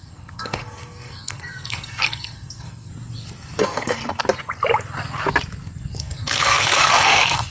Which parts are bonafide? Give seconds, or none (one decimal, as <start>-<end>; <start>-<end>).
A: 2.9-3.6; 4.2-5.9